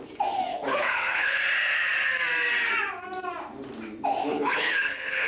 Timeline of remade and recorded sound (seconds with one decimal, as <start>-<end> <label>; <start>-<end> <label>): 0.0-0.5 recorded; 0.5-1.4 remade; 1.4-4.2 recorded; 4.2-5.3 remade